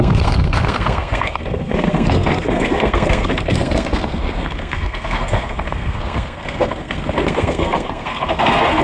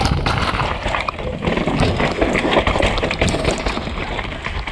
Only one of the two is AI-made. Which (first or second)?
first